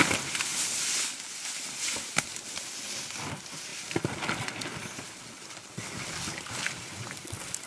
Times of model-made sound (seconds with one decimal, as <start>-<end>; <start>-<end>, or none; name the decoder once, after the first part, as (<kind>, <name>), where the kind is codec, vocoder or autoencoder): none